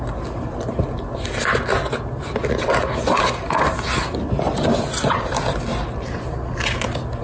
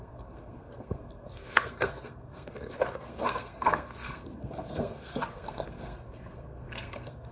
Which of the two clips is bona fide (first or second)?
first